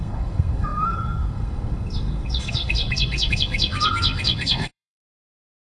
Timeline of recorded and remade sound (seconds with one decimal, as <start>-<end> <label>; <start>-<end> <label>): 0.0-5.6 remade